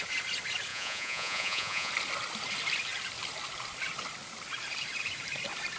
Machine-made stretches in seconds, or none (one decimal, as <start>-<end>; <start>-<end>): 0.7-1.9